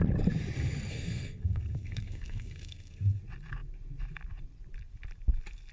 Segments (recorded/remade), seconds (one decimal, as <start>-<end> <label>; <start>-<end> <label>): 0.0-0.9 recorded; 0.9-3.2 remade; 3.2-5.7 recorded

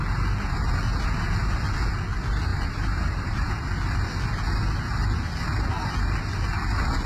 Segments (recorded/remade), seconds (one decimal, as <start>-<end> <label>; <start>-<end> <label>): 0.0-2.5 recorded; 2.5-3.5 remade; 3.5-7.1 recorded

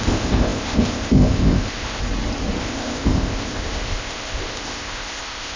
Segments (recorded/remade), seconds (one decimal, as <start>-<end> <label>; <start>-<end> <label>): 0.0-2.0 remade; 2.0-2.6 recorded; 2.6-5.6 remade

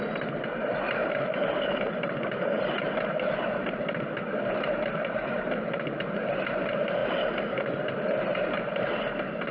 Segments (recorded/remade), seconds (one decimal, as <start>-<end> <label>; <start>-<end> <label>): 0.0-7.0 recorded; 7.0-8.8 remade; 8.8-9.5 recorded